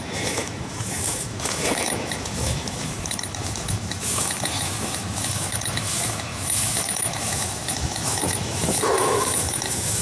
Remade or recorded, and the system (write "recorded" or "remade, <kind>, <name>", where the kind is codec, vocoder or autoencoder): remade, autoencoder, DAC-VAE